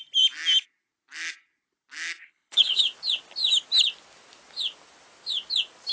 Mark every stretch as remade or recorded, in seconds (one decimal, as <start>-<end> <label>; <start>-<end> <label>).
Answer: 0.0-2.2 recorded; 2.2-2.8 remade; 2.8-5.9 recorded